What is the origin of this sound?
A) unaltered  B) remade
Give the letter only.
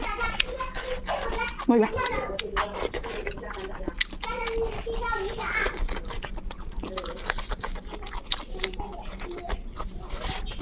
A